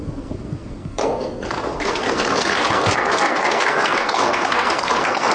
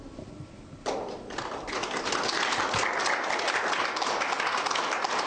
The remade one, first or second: first